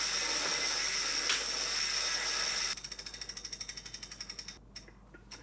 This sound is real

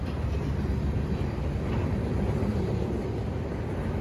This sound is real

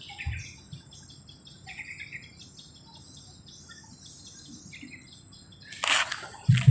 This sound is real